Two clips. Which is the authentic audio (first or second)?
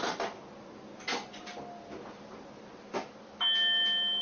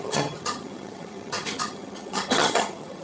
first